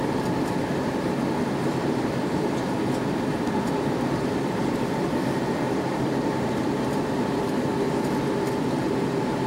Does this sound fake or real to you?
fake